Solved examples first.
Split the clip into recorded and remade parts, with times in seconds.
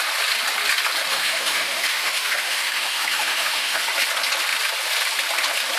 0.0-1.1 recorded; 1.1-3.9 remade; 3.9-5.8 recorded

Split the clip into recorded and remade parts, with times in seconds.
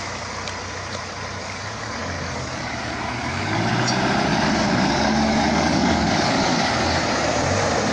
0.0-1.4 recorded; 1.4-3.7 remade; 3.7-4.3 recorded; 4.3-7.1 remade; 7.1-7.9 recorded